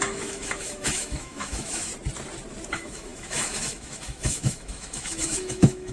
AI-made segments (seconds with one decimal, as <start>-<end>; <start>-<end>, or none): 0.0-1.9; 2.7-5.9